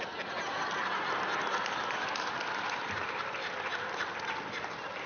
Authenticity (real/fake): real